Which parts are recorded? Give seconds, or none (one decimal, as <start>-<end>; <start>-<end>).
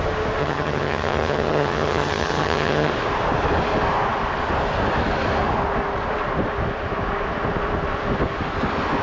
0.0-0.4; 2.9-9.0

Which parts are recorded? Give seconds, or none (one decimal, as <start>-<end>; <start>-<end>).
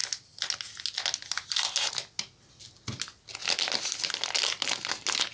0.0-5.3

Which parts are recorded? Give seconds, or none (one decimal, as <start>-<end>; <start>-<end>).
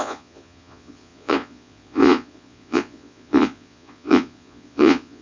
none